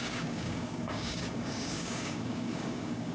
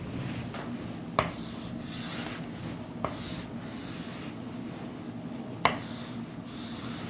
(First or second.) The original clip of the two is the second